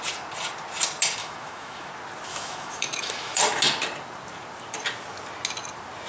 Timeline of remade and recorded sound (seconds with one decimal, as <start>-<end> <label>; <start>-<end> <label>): 0.0-1.2 recorded; 1.2-1.9 remade; 1.9-2.3 recorded; 2.3-3.4 remade; 3.4-6.1 recorded